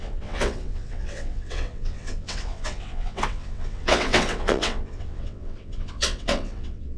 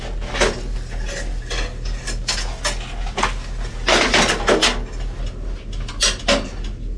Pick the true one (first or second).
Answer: second